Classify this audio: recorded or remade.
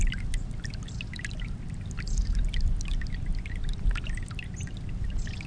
recorded